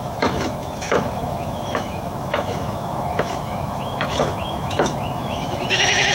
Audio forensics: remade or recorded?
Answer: remade